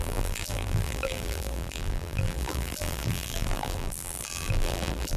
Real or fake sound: fake